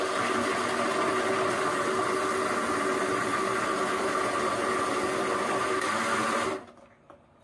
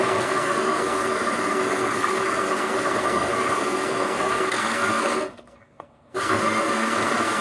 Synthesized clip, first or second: second